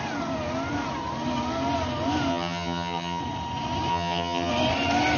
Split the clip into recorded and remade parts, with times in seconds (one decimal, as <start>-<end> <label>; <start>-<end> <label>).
0.0-2.3 recorded; 2.3-3.2 remade; 3.2-3.9 recorded; 3.9-4.5 remade; 4.5-5.2 recorded